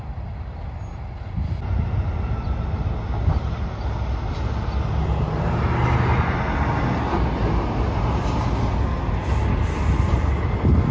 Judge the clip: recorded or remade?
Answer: recorded